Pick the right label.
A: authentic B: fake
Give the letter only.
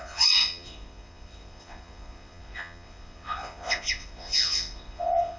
B